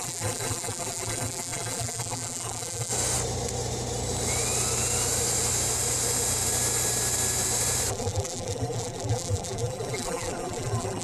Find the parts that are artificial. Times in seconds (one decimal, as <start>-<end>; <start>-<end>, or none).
0.0-2.9; 7.9-11.0